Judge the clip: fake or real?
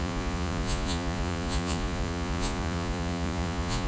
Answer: fake